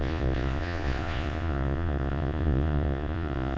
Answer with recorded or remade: remade